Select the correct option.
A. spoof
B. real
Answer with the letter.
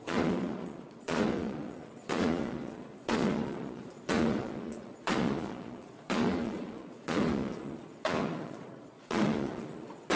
A